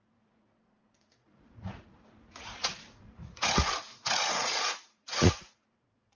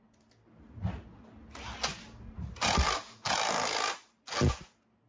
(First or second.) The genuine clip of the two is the second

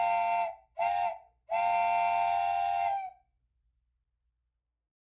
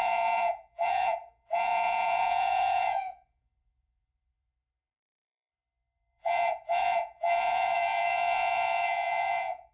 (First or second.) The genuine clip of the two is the first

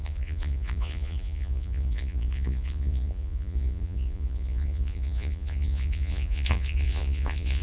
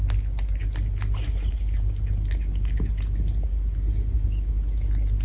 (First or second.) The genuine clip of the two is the second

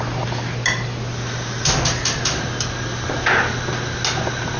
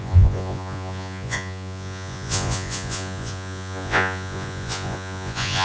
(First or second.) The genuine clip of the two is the first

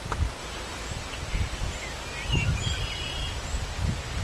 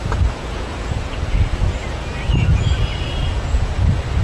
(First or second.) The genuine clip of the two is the first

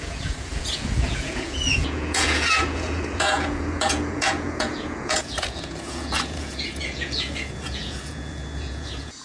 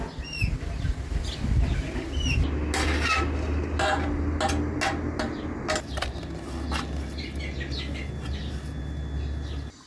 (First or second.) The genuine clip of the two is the second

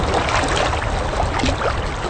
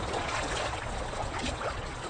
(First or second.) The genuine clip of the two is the first